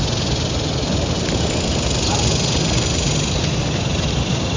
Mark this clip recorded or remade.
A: recorded